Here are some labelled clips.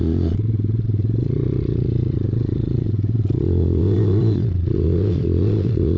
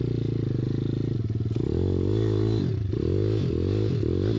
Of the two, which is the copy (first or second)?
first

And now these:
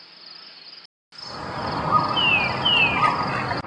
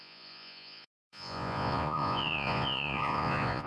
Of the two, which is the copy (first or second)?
second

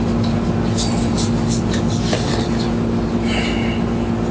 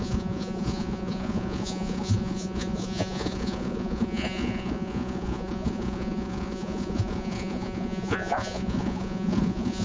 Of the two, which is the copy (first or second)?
second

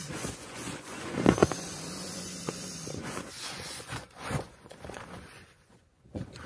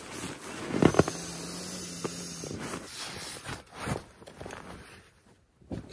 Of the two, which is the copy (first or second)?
first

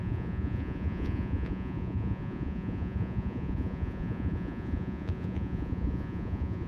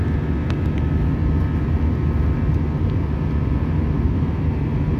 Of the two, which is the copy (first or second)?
first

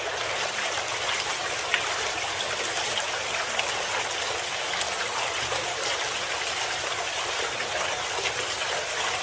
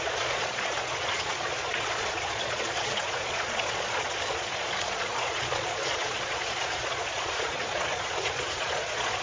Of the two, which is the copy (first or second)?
second